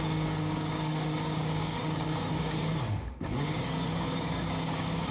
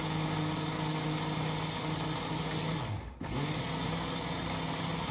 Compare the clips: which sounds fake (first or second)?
first